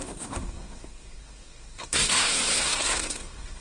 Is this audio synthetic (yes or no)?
yes